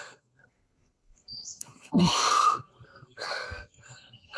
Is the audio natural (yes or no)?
no